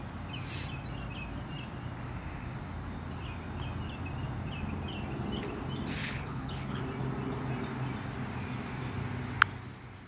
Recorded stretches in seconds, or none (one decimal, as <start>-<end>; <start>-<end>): 0.0-6.0; 6.8-10.1